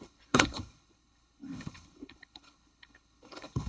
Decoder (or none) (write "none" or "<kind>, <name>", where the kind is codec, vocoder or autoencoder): codec, HILCodec